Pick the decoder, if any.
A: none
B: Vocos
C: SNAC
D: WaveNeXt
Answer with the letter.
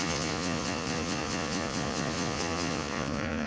B